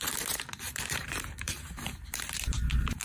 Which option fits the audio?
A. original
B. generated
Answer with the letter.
B